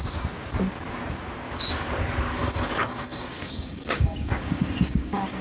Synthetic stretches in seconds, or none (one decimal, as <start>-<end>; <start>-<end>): 2.4-5.4